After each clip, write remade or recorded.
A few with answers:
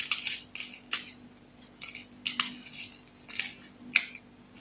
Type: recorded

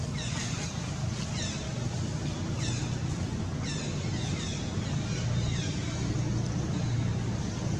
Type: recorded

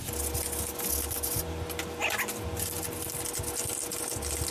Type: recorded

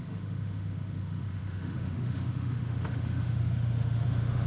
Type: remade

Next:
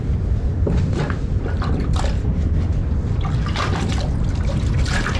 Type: recorded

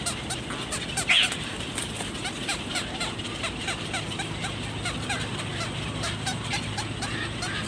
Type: recorded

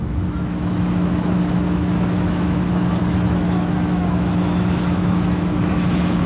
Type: remade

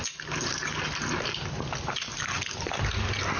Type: recorded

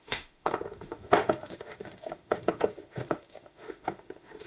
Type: remade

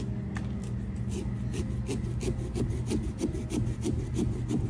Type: recorded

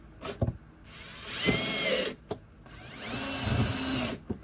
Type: recorded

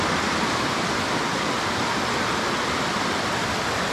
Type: recorded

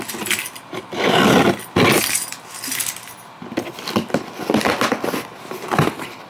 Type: recorded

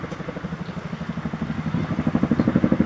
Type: recorded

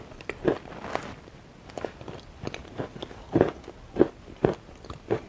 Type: recorded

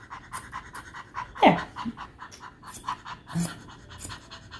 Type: recorded